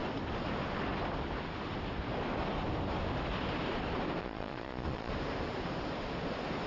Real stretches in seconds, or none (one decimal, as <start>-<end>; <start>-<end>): 0.0-4.2; 5.1-6.7